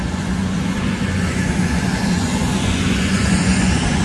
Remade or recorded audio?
remade